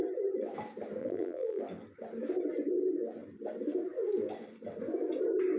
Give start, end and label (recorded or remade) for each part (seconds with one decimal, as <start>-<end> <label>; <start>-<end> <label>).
0.0-1.0 recorded; 1.0-1.6 remade; 1.6-5.6 recorded